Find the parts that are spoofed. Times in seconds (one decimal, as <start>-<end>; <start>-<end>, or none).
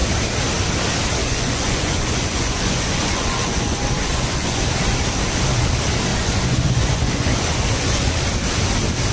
1.2-4.6; 6.1-8.1